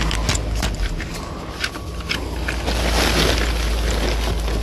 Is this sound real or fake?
real